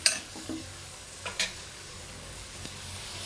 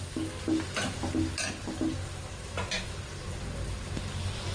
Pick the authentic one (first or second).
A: second